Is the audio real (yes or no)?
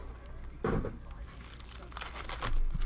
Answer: yes